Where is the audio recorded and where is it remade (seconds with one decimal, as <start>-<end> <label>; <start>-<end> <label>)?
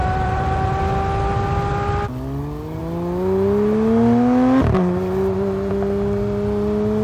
0.0-0.8 remade; 0.8-7.0 recorded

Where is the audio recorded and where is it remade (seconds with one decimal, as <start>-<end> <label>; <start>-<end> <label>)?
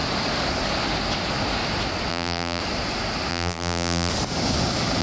0.0-2.1 recorded; 2.1-2.6 remade; 2.6-3.3 recorded; 3.3-4.1 remade; 4.1-5.0 recorded